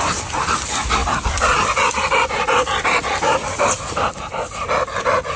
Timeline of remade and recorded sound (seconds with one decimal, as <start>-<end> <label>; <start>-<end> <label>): 0.0-5.4 recorded